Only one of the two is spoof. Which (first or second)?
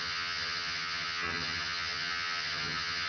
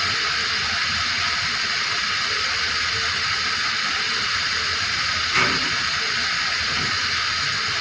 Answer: first